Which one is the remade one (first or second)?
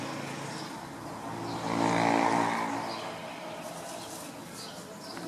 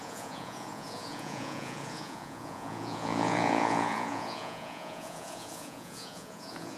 second